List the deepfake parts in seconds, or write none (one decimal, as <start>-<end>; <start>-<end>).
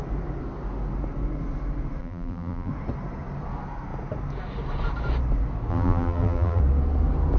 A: 2.0-2.7; 5.7-6.6